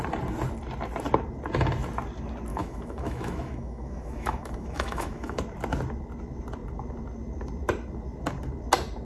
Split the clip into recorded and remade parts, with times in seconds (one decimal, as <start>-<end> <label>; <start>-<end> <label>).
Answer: 0.0-2.5 recorded; 2.5-5.4 remade; 5.4-9.0 recorded